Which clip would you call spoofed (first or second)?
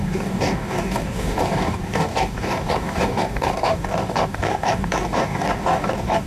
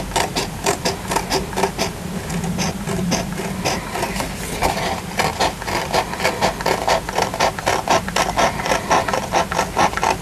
first